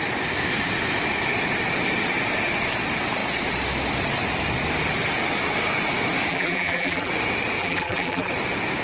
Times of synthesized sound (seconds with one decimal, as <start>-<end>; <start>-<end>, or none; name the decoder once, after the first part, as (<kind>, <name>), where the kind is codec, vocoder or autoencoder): 6.3-7.1 (vocoder, BigVGAN v2); 7.6-8.3